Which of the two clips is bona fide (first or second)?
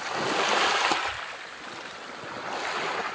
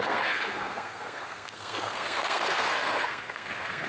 first